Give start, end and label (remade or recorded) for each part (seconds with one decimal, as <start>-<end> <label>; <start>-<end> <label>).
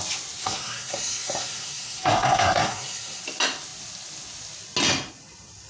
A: 0.0-0.4 recorded; 0.4-3.2 remade; 3.2-5.7 recorded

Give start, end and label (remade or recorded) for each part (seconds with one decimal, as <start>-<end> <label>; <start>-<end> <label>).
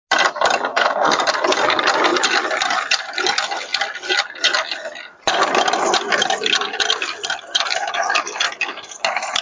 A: 0.0-0.7 recorded; 0.7-1.2 remade; 1.2-9.4 recorded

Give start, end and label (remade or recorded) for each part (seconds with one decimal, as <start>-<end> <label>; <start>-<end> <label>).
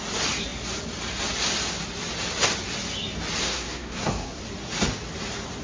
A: 0.0-3.4 recorded; 3.4-4.4 remade; 4.4-5.6 recorded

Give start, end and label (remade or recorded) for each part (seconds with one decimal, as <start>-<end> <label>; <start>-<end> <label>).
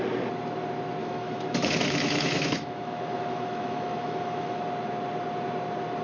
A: 0.0-1.0 recorded; 1.0-4.6 remade; 4.6-6.0 recorded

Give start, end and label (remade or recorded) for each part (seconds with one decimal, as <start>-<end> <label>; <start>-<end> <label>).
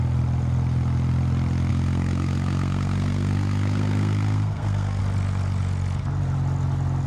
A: 0.0-1.7 recorded; 1.7-5.0 remade; 5.0-7.1 recorded